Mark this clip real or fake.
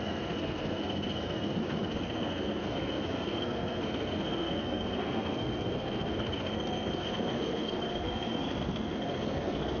fake